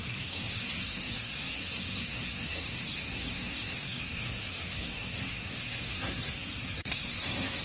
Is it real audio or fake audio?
fake